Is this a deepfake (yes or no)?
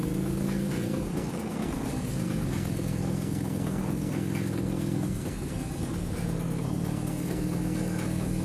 yes